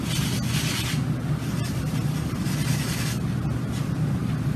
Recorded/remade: recorded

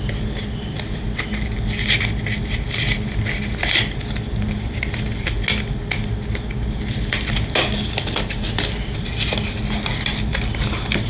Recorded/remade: recorded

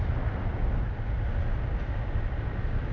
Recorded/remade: recorded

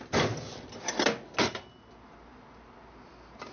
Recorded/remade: recorded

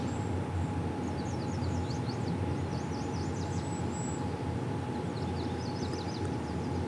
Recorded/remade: recorded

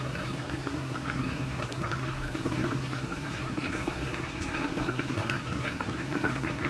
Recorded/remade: remade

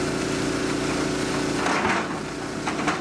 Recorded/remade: recorded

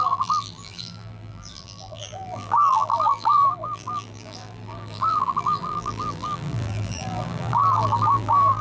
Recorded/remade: remade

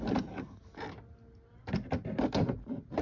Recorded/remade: recorded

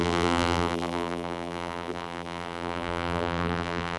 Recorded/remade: remade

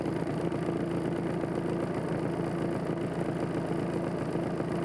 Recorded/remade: recorded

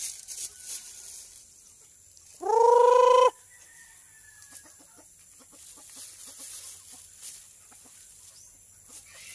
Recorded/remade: recorded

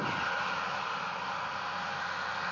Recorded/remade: recorded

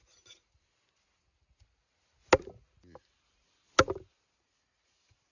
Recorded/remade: recorded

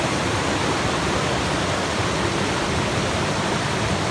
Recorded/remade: remade